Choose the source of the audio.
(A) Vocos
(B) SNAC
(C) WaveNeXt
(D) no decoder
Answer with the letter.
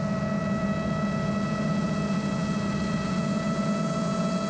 D